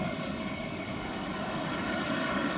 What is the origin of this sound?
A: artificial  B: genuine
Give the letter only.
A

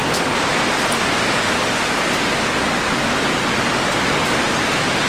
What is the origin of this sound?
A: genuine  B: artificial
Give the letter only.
A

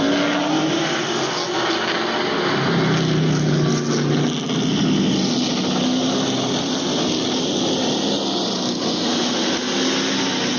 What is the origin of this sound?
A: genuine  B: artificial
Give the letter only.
A